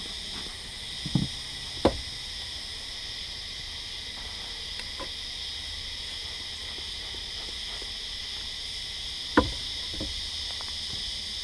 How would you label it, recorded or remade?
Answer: recorded